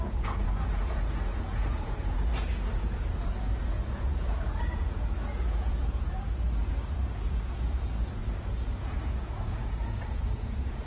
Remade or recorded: remade